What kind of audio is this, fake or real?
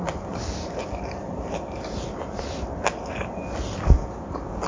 real